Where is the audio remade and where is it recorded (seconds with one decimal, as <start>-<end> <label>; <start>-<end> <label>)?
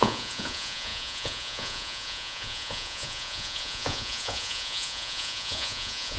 0.0-6.2 remade